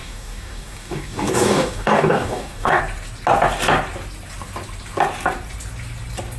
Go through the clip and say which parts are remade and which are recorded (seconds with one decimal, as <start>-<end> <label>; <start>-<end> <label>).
0.0-2.8 remade; 2.8-6.4 recorded